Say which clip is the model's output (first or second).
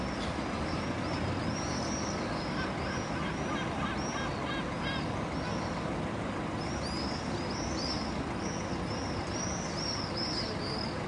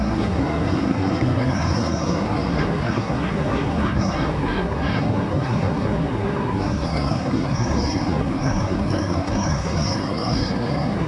second